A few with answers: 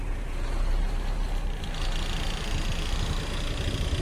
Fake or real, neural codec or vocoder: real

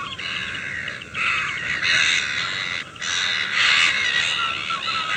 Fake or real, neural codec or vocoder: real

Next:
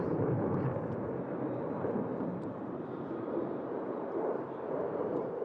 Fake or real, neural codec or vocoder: fake, vocoder, BigVGAN v2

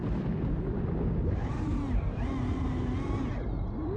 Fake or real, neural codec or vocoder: real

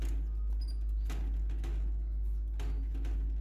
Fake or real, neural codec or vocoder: real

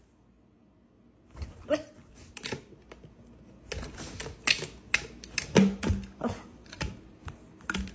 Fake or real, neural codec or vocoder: real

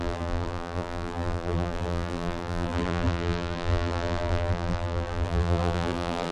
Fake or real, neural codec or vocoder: fake, vocoder, BigVGAN v2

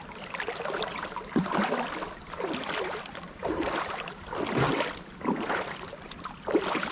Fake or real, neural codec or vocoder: real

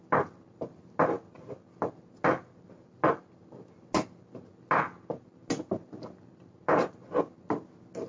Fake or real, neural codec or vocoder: real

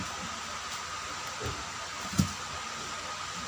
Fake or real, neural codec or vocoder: real